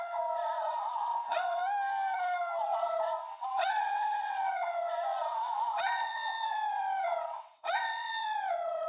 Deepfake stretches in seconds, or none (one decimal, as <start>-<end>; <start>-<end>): 0.0-1.6; 2.6-8.9